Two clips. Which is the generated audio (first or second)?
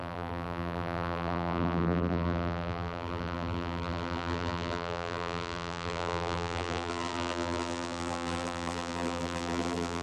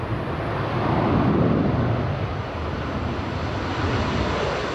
first